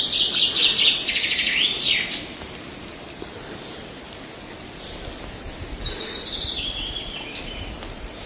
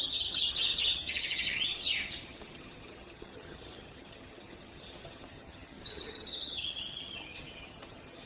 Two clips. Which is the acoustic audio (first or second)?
first